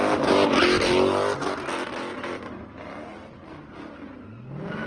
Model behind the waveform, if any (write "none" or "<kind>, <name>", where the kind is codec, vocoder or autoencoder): none